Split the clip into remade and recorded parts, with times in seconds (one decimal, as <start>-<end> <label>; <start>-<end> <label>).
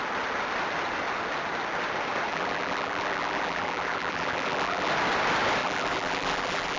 0.0-2.3 recorded; 2.3-4.9 remade; 4.9-5.6 recorded; 5.6-6.8 remade